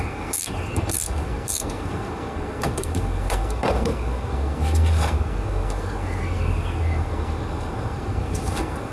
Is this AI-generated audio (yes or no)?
yes